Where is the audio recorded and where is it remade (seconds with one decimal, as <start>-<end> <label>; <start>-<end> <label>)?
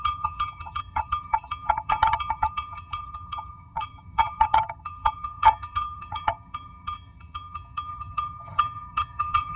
0.0-9.6 remade